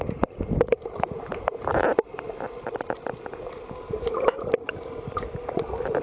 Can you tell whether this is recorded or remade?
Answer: recorded